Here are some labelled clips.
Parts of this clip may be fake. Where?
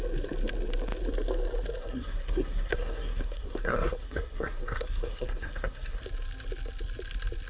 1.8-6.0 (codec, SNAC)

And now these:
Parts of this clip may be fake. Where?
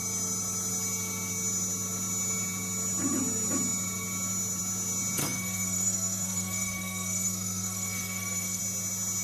5.2-8.6 (codec, SNAC)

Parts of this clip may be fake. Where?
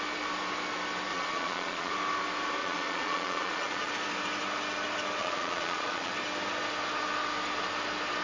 1.1-1.9 (vocoder, Vocos); 2.6-3.9; 5.2-6.1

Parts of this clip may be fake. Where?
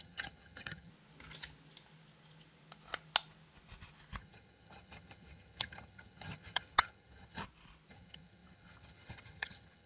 0.0-0.9 (vocoder, HiFi-GAN); 4.2-7.4; 7.9-9.9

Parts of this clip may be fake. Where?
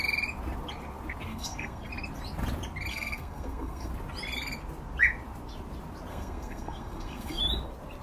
1.3-1.9 (codec, SNAC); 2.9-3.9; 6.1-7.4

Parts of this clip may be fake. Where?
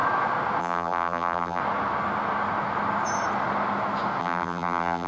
0.6-1.6 (vocoder, BigVGAN v2); 4.2-5.1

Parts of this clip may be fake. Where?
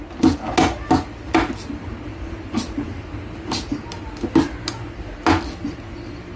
none